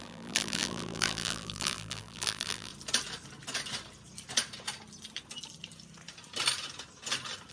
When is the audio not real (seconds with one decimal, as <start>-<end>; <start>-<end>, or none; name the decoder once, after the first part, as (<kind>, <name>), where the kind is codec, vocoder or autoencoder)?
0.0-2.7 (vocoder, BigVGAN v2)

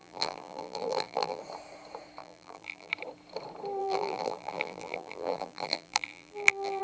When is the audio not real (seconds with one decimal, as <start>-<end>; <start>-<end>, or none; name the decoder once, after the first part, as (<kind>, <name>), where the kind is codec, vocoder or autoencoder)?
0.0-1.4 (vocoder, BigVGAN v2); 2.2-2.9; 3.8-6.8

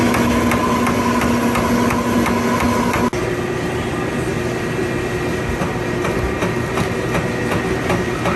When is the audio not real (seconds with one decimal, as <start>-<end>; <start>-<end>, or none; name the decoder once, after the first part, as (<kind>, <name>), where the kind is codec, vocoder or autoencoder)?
none